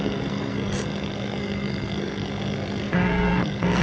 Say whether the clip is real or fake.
fake